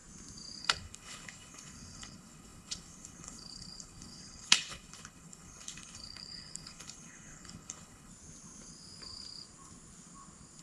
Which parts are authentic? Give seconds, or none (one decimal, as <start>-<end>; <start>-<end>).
0.0-0.6; 8.1-10.6